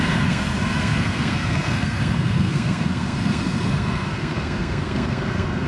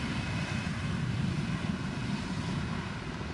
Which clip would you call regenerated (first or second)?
first